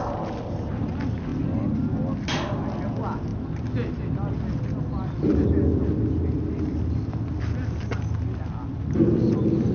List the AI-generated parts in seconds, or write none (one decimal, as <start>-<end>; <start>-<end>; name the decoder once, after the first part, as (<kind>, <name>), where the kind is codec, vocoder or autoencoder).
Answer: none